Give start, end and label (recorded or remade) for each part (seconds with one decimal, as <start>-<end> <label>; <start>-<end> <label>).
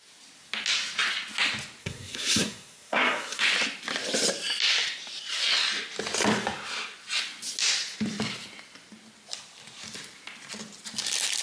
0.0-1.8 recorded; 1.8-3.5 remade; 3.5-11.4 recorded